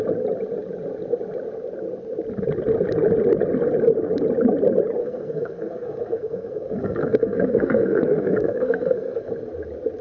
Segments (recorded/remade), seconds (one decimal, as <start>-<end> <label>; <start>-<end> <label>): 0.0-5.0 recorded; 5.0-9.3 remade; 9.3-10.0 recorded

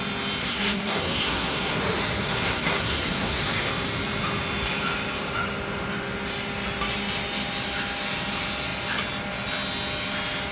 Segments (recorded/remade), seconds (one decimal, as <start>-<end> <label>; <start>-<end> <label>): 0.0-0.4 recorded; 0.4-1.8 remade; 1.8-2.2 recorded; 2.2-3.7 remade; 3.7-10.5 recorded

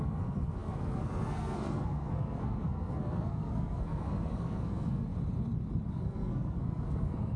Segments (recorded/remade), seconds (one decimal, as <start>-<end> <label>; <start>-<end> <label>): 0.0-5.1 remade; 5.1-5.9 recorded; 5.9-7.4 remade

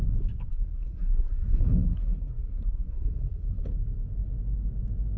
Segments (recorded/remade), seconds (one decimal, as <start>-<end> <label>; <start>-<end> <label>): 0.0-0.5 recorded; 0.5-3.6 remade; 3.6-5.2 recorded

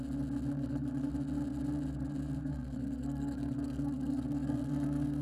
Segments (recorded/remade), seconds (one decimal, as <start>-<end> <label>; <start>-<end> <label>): 0.0-0.5 recorded; 0.5-1.1 remade; 1.1-2.4 recorded; 2.4-5.2 remade

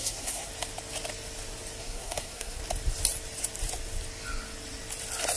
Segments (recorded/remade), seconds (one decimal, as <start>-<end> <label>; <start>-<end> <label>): 0.0-0.5 remade; 0.5-1.8 recorded; 1.8-2.6 remade; 2.6-5.4 recorded